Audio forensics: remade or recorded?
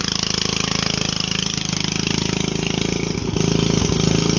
recorded